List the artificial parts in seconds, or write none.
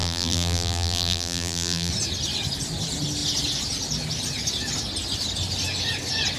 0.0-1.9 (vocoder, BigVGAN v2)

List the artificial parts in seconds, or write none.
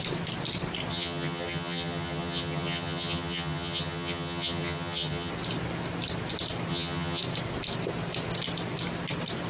0.9-5.3 (vocoder, HiFi-GAN); 6.7-7.2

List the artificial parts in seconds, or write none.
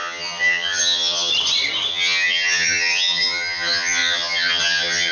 0.0-1.3 (vocoder, HiFi-GAN); 1.9-5.1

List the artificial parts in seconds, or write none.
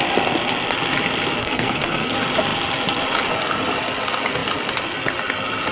1.4-2.1 (codec, SNAC)